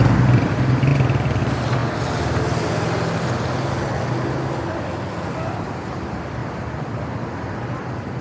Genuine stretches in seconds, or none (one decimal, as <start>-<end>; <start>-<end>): 1.8-6.0; 6.4-8.2